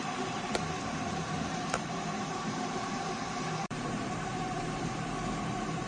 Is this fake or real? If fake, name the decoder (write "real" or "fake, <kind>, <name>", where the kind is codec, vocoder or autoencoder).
fake, vocoder, BigVGAN v2